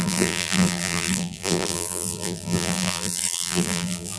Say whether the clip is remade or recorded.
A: remade